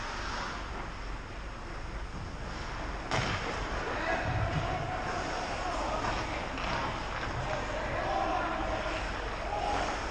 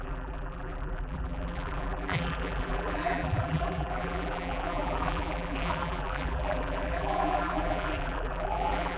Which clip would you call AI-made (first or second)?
second